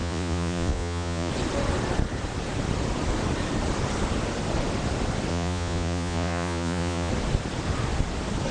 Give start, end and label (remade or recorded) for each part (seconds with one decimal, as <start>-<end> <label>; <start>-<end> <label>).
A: 0.0-1.3 remade; 1.3-5.3 recorded; 5.3-7.1 remade; 7.1-8.5 recorded